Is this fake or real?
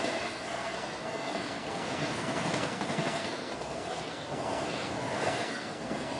fake